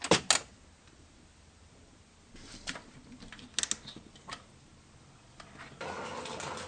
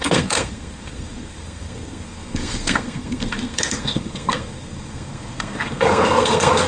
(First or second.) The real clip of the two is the first